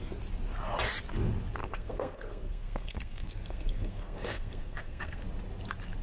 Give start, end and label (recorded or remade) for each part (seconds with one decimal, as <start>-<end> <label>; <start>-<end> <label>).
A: 0.0-1.6 recorded; 1.6-5.2 remade; 5.2-6.0 recorded